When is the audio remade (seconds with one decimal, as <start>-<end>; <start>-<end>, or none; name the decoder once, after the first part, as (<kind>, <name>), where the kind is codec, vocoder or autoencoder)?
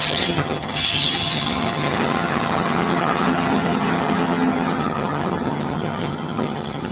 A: 0.0-6.9 (vocoder, HiFi-GAN)